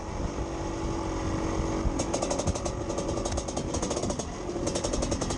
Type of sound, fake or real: real